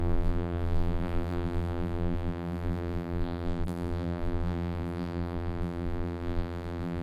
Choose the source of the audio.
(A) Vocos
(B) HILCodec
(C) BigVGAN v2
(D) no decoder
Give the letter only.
C